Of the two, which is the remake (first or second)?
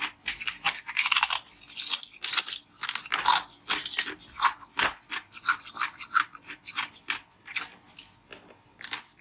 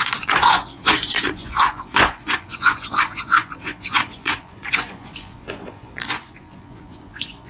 second